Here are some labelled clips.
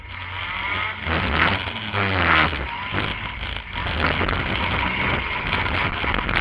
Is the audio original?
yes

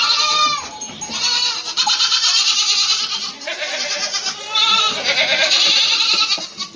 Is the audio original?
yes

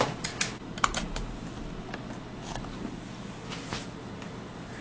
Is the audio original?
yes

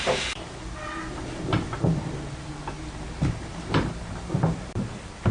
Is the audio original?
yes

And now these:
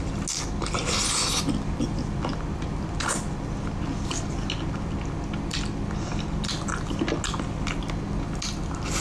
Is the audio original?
yes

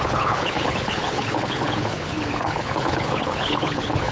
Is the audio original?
no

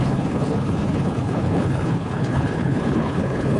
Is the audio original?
no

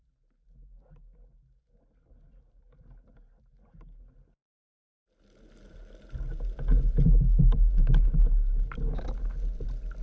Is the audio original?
yes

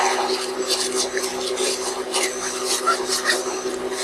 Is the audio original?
yes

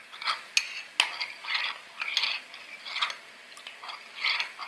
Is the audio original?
yes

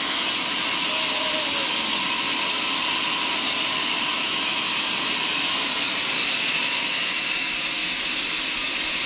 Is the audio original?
yes